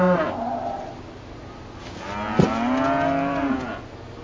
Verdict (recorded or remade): recorded